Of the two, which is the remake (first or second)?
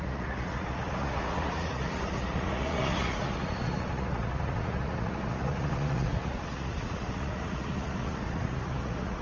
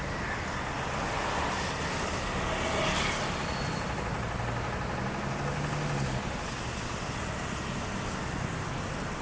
first